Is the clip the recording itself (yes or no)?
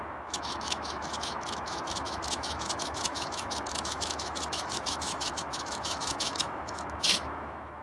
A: no